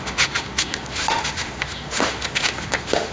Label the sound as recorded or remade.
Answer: remade